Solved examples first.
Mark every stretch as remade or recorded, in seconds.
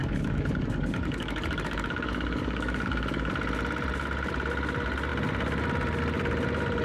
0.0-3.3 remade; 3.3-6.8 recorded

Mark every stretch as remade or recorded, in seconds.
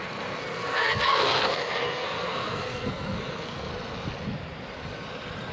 0.0-0.4 recorded; 0.4-3.7 remade; 3.7-5.5 recorded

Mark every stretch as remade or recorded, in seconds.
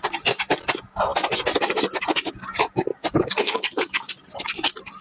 0.0-2.9 recorded; 2.9-4.1 remade; 4.1-5.0 recorded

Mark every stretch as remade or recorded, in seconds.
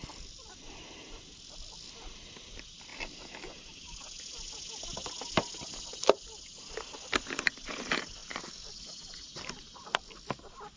0.0-10.8 recorded